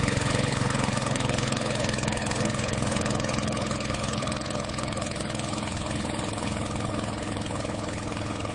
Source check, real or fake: fake